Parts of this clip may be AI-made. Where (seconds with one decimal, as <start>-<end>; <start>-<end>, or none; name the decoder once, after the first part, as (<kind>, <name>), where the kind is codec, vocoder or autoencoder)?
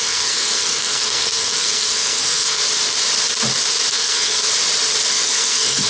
0.0-2.6 (codec, SNAC); 3.9-4.4; 5.1-5.9